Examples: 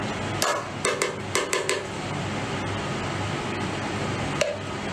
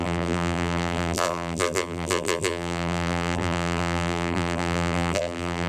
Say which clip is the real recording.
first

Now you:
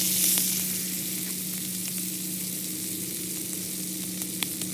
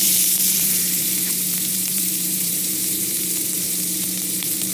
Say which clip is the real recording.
first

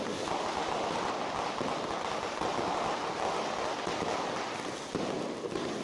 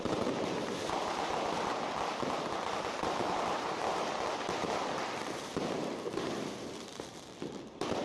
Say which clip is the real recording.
first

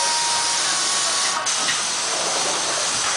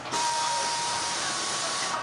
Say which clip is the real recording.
first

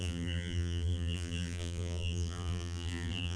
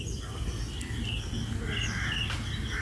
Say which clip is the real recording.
second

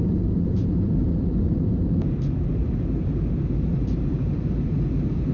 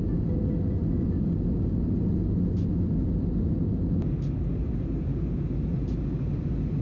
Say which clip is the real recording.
second